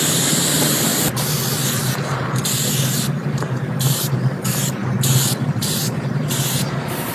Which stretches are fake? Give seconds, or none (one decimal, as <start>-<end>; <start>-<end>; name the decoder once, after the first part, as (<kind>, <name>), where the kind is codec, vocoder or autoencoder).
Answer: 0.0-0.9 (vocoder, BigVGAN v2); 3.0-4.8; 5.5-7.1